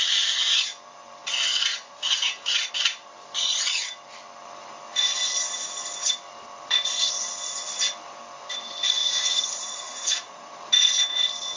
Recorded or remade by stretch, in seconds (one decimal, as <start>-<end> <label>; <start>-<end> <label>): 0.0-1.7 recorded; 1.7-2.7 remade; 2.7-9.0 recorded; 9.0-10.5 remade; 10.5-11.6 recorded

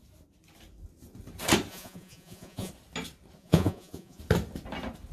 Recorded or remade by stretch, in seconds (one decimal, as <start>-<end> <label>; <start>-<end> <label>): 0.0-1.7 recorded; 1.7-2.7 remade; 2.7-3.4 recorded; 3.4-4.2 remade; 4.2-5.1 recorded

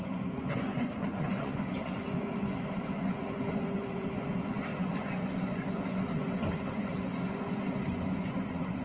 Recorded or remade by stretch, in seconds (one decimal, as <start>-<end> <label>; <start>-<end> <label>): 0.0-8.8 remade

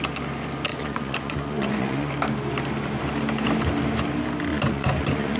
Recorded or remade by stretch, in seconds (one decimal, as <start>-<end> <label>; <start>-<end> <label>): 0.0-0.7 recorded; 0.7-2.1 remade; 2.1-4.5 recorded; 4.5-5.4 remade

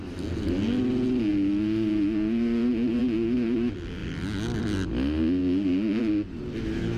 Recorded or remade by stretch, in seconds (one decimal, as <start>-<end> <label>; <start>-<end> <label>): 0.0-7.0 recorded

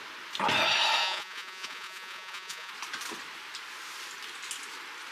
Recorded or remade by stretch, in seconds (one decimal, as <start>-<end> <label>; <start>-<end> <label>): 0.0-1.0 recorded; 1.0-2.7 remade; 2.7-5.1 recorded